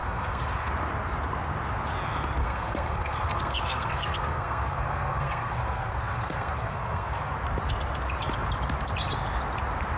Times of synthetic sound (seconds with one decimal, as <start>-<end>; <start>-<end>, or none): 0.0-0.7; 2.4-7.3